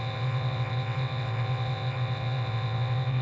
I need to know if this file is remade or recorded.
remade